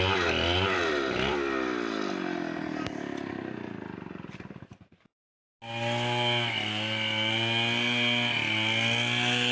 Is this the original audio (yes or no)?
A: yes